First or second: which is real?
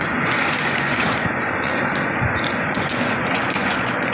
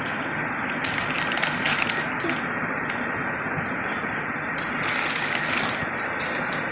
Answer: second